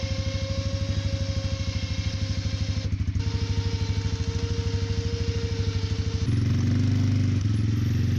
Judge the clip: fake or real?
real